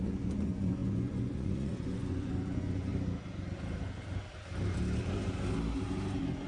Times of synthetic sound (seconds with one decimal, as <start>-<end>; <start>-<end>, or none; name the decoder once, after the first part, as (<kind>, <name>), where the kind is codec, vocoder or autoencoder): 0.0-2.9 (vocoder, Vocos)